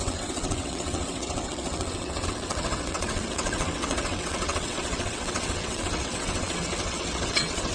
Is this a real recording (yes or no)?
no